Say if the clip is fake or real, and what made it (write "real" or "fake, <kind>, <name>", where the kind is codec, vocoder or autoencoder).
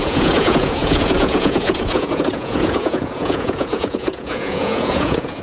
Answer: fake, vocoder, Vocos